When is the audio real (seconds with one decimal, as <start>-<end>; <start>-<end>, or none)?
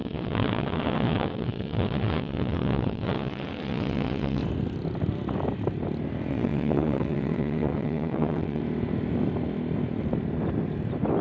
4.4-6.3; 8.6-11.2